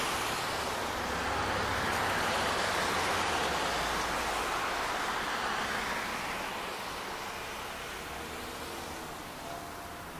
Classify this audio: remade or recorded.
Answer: recorded